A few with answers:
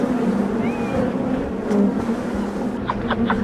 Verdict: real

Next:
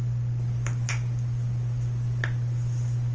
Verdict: real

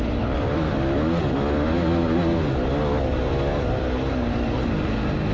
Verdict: real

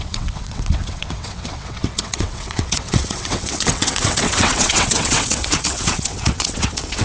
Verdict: fake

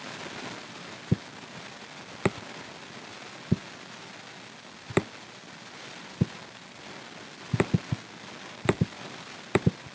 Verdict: real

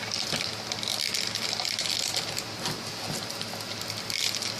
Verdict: real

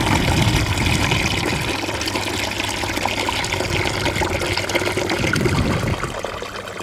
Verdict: real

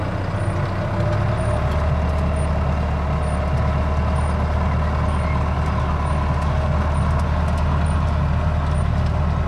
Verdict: real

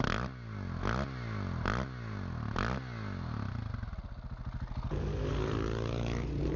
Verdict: real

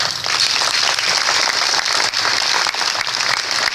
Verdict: real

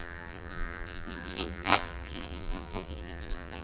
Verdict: fake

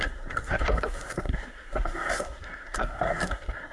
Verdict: fake